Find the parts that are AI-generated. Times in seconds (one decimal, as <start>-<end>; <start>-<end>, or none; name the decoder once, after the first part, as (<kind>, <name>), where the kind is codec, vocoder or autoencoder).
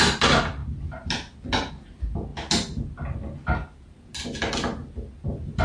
none